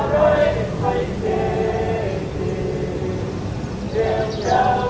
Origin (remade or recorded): recorded